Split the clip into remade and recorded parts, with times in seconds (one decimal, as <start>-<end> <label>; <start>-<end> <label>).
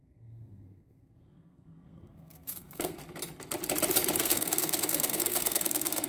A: 0.0-3.0 remade; 3.0-4.2 recorded; 4.2-6.1 remade